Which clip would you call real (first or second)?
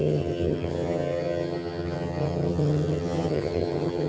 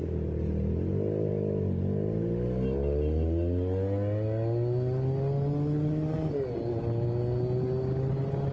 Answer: second